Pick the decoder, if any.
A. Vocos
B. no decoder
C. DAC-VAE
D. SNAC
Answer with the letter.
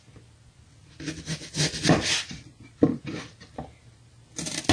B